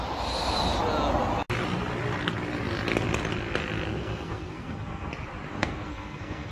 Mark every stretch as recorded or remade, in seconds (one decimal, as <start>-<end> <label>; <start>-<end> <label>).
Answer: 0.0-3.9 recorded; 3.9-5.1 remade; 5.1-5.5 recorded; 5.5-6.5 remade